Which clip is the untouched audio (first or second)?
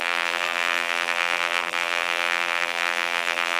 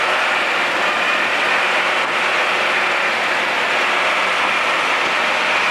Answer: second